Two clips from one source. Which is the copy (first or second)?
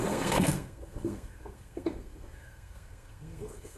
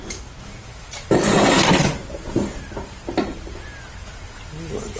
first